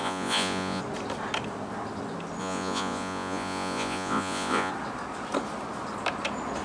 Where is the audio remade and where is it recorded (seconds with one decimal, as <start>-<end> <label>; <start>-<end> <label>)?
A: 0.0-0.8 remade; 0.8-2.4 recorded; 2.4-4.7 remade; 4.7-6.6 recorded